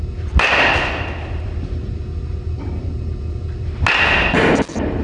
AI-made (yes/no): no